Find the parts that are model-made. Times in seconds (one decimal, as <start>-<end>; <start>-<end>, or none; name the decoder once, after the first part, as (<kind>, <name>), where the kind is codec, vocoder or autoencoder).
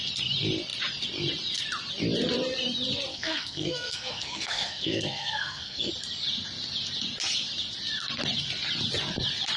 3.1-5.9 (codec, SNAC)